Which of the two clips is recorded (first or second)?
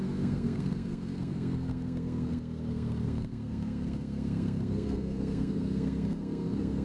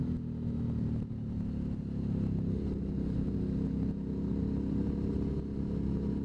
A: second